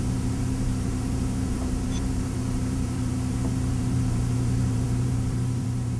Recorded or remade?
remade